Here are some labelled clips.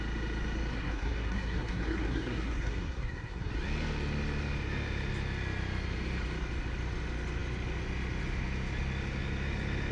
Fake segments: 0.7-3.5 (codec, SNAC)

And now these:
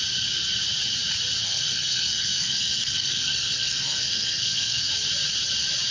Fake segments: 1.4-4.9 (codec, SNAC)

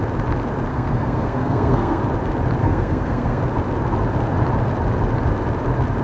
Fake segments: 0.7-2.0 (codec, SNAC); 2.6-3.4

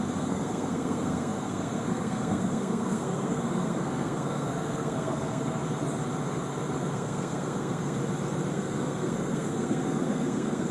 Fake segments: 0.0-5.6 (codec, SNAC); 6.8-8.0; 8.5-10.7

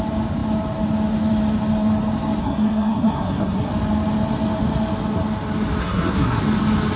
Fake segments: 2.4-3.7 (codec, SNAC); 5.8-6.4

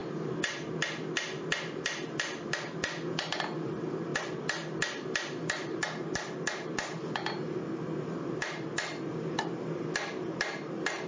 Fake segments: none

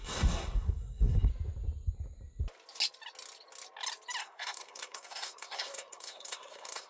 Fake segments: 0.0-1.3 (codec, SNAC); 4.2-6.9